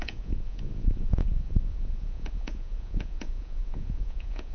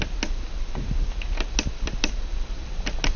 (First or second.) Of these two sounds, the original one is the second